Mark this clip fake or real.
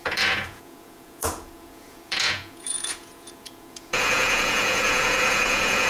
fake